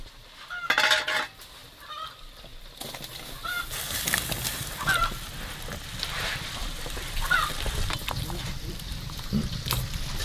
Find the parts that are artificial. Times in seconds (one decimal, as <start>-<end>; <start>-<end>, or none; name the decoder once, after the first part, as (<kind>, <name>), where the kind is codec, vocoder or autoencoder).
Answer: 1.6-2.6 (vocoder, BigVGAN v2); 6.6-8.8